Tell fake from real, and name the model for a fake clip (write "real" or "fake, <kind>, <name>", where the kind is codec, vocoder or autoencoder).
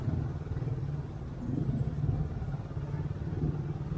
real